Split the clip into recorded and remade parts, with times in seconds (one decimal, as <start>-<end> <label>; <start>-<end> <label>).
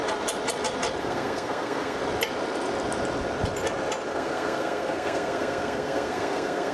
0.0-1.0 recorded; 1.0-2.0 remade; 2.0-4.1 recorded; 4.1-6.7 remade